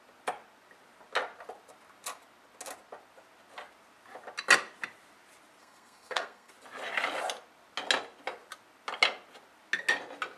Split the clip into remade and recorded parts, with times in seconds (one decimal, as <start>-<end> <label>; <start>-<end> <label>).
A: 0.0-5.6 recorded; 5.6-6.5 remade; 6.5-10.4 recorded